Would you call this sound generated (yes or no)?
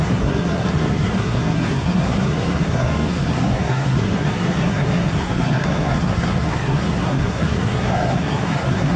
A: yes